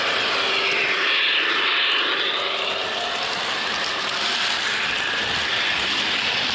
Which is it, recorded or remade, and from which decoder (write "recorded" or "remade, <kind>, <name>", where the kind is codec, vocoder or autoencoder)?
recorded